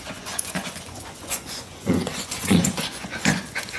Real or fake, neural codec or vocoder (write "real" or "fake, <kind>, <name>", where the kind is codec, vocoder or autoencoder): fake, vocoder, Vocos